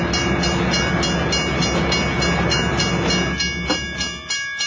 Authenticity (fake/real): real